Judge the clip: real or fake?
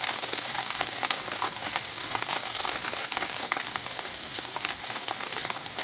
fake